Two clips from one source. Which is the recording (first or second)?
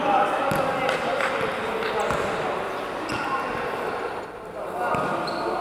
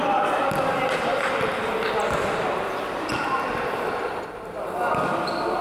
first